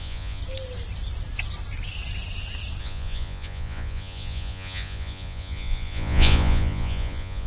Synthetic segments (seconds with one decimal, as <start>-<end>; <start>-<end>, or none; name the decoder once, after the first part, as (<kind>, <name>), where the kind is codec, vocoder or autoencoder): 0.0-0.4 (vocoder, Vocos); 2.8-7.5